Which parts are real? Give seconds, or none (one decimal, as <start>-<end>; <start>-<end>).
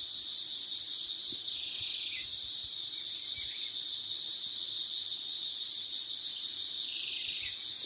0.0-2.3; 3.7-6.3; 7.1-7.9